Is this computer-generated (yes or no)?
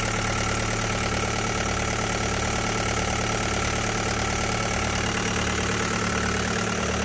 no